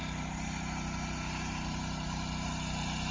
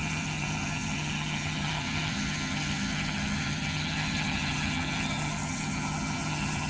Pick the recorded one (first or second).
first